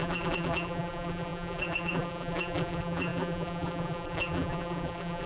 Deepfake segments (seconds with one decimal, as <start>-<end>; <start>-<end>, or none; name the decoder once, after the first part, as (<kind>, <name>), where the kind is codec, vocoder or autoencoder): 0.0-5.3 (vocoder, BigVGAN v2)